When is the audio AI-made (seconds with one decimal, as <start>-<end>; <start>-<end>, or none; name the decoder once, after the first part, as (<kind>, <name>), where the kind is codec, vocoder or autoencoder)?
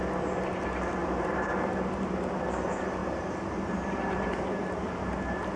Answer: 1.0-1.5 (vocoder, BigVGAN v2); 3.0-5.6